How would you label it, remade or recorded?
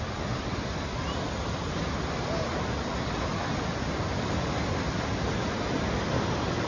recorded